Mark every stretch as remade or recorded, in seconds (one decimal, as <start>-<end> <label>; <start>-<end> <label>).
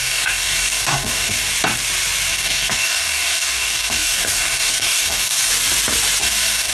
0.0-1.5 remade; 1.5-2.3 recorded; 2.3-5.5 remade; 5.5-6.2 recorded; 6.2-6.7 remade